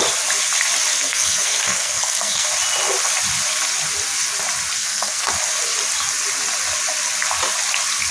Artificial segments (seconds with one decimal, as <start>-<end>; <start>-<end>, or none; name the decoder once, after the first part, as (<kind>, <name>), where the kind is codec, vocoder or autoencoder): 0.9-2.5 (codec, SNAC); 4.8-5.3

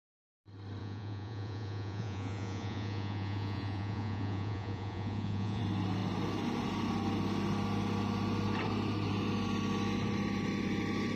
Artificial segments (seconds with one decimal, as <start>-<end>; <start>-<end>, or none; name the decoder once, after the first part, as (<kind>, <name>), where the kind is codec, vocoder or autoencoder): 0.8-5.6 (vocoder, Vocos)

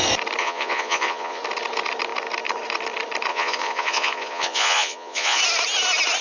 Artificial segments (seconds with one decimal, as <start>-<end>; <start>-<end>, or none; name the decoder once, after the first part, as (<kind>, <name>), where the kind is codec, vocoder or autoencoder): 0.4-1.4 (vocoder, Vocos); 3.3-5.4

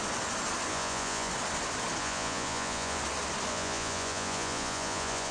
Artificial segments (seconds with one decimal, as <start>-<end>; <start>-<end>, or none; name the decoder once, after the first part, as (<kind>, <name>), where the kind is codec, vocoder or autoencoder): 0.7-1.3 (vocoder, Vocos); 2.0-3.0; 3.5-5.3

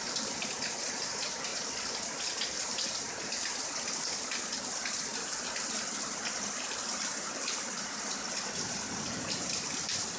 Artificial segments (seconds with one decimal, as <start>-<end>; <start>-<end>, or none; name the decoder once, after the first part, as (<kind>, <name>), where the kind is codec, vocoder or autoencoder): 0.0-10.2 (vocoder, BigVGAN v2)

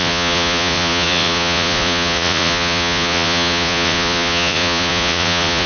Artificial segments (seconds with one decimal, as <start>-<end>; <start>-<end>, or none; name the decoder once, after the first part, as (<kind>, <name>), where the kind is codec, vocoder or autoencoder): 0.0-5.7 (vocoder, Vocos)

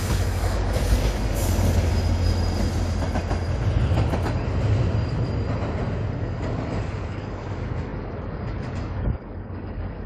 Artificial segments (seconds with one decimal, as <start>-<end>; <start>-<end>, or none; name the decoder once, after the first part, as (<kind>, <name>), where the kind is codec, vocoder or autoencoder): 0.0-1.9 (codec, DAC); 6.1-10.1